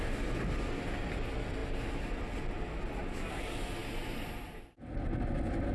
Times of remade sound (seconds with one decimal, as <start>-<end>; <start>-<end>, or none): none